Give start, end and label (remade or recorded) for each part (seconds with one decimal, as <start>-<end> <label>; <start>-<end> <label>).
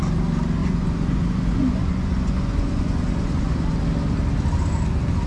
0.0-0.6 recorded; 0.6-3.8 remade; 3.8-5.3 recorded